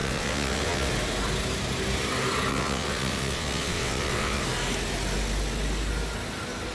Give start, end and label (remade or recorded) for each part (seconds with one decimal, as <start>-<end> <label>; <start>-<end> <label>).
0.0-0.9 remade; 0.9-2.5 recorded; 2.5-4.4 remade; 4.4-6.7 recorded